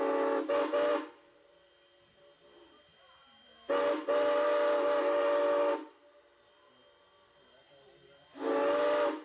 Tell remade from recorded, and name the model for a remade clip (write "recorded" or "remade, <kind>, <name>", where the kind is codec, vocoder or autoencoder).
recorded